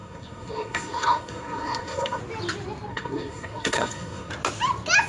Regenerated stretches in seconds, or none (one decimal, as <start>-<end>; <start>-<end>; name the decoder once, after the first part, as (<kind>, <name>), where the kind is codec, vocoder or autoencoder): 0.0-2.2 (codec, SNAC); 2.9-4.3